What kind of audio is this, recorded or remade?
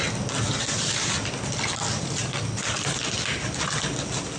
recorded